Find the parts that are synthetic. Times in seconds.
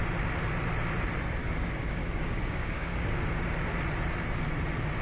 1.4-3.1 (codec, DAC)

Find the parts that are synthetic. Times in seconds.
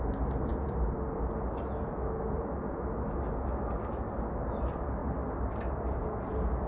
none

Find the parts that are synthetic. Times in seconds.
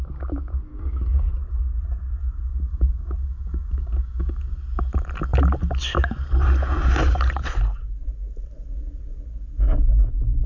0.7-1.3 (codec, DAC); 2.5-4.4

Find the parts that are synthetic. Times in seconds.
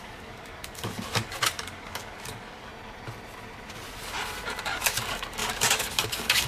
0.0-2.7 (codec, DAC); 4.7-6.5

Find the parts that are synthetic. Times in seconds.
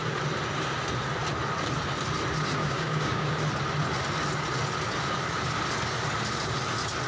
2.6-3.4 (codec, DAC)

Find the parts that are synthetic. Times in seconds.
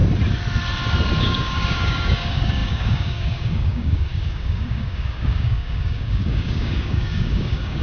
1.2-7.8 (codec, DAC)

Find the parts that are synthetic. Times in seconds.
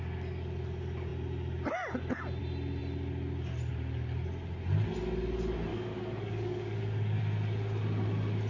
5.7-7.2 (codec, DAC)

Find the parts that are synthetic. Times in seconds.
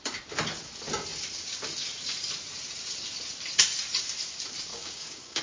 4.7-5.4 (codec, DAC)